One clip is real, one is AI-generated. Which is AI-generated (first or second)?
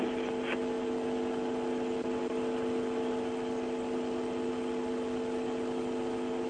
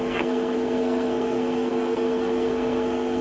second